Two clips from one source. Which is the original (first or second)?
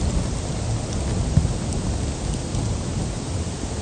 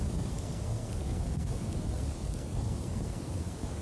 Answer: first